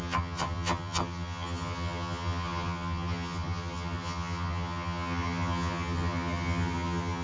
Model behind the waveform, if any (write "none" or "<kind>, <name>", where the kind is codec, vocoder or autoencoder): vocoder, HiFi-GAN